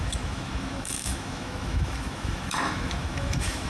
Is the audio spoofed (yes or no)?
yes